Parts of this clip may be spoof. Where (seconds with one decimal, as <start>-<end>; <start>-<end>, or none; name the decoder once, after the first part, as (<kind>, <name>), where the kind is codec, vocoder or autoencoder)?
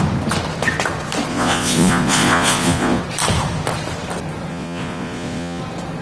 1.3-3.0 (vocoder, Vocos); 4.5-5.6